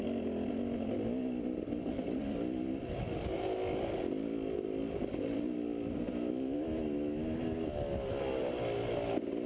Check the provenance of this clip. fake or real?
real